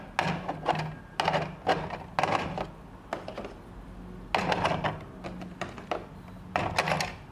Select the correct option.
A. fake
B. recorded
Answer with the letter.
B